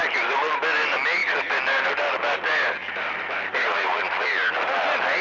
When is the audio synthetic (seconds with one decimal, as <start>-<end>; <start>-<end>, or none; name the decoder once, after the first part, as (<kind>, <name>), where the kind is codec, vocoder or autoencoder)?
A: 0.0-0.6 (vocoder, BigVGAN v2); 2.8-4.8